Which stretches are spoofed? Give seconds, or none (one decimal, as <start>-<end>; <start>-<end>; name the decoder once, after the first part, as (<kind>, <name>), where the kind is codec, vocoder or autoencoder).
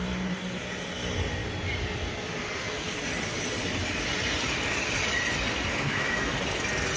5.7-6.3 (autoencoder, DAC-VAE)